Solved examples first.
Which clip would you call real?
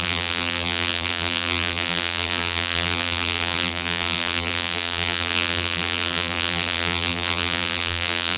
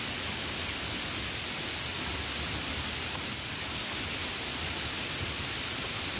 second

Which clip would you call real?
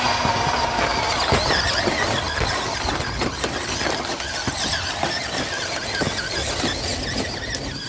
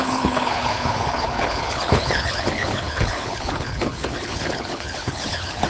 first